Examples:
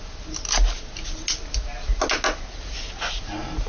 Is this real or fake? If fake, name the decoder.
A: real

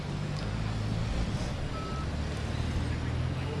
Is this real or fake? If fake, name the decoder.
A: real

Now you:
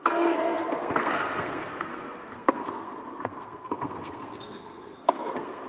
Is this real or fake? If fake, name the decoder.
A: fake, codec, SNAC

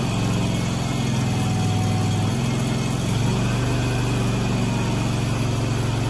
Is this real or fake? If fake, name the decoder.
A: real